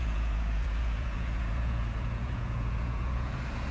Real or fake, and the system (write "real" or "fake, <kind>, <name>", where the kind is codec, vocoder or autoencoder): fake, vocoder, Vocos